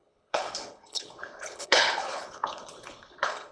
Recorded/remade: remade